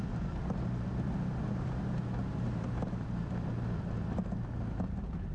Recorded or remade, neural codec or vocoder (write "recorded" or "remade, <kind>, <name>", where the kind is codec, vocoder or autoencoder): recorded